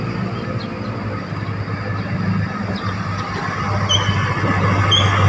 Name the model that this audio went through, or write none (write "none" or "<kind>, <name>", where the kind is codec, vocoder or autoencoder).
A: none